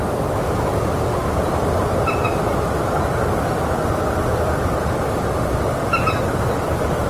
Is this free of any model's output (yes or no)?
yes